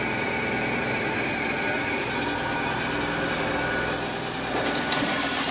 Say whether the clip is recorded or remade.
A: recorded